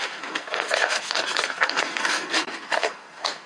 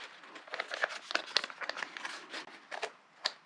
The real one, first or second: second